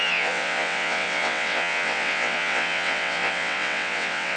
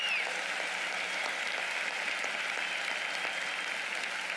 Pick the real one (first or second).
second